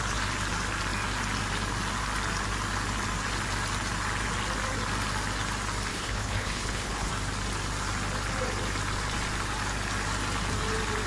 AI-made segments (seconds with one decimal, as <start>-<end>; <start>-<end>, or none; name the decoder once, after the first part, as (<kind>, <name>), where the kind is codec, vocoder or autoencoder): 5.9-7.1 (codec, HILCodec)